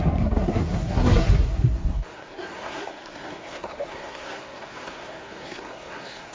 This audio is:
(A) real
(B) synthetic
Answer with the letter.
B